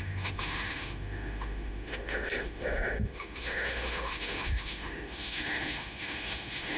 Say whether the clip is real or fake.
fake